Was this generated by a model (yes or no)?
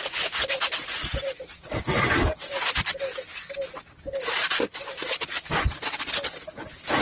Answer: no